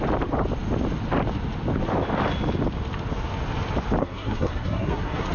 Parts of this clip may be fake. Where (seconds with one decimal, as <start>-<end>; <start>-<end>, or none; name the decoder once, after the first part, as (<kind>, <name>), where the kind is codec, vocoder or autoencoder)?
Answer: 4.0-5.3 (codec, SNAC)

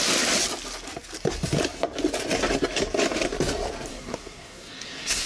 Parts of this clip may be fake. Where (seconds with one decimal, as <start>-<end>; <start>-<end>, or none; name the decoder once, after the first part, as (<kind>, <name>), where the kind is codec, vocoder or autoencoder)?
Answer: 3.9-5.3 (codec, SNAC)

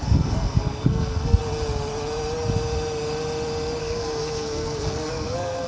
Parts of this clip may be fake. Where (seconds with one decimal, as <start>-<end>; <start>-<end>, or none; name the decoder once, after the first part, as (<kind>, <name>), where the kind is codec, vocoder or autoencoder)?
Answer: 0.0-1.4 (codec, SNAC); 3.8-5.7

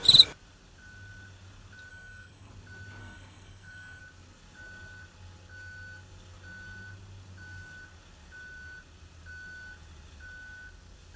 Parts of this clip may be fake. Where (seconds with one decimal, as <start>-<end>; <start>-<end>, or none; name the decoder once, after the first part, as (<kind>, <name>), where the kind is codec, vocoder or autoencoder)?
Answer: 1.9-2.5 (codec, SNAC); 3.0-4.0